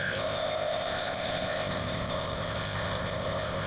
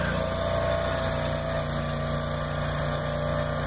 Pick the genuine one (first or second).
second